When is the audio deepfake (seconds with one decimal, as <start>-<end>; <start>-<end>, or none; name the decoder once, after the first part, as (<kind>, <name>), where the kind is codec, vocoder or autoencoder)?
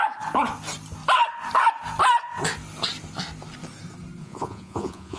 4.2-5.2 (vocoder, Vocos)